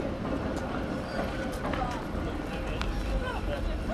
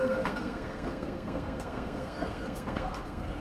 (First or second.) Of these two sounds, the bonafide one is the first